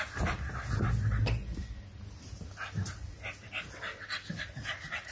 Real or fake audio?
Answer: real